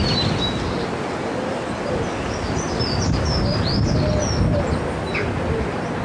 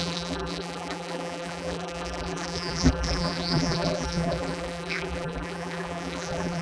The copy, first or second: second